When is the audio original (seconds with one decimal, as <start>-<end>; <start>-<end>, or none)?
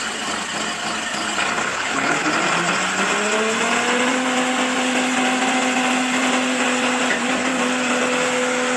0.0-1.7; 2.3-8.8